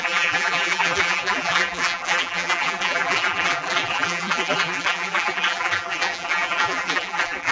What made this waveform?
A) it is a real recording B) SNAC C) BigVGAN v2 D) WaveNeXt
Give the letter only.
C